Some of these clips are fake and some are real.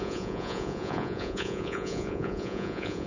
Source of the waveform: fake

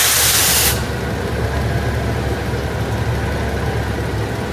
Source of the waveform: real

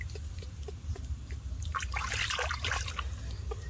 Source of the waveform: real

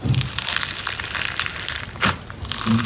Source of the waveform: fake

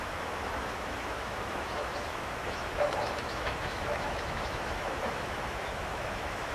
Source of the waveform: fake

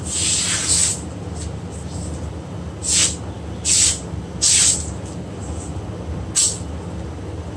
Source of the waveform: real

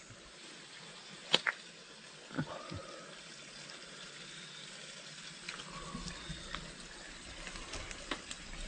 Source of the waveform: real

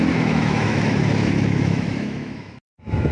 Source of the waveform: fake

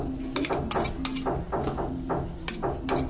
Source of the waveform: real